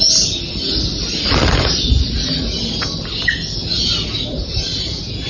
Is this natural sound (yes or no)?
yes